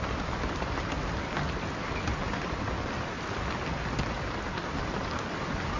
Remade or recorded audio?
recorded